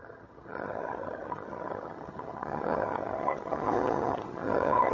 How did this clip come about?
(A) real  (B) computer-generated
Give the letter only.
B